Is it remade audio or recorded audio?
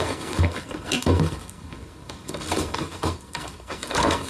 remade